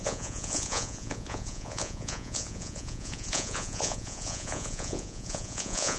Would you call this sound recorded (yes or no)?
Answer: no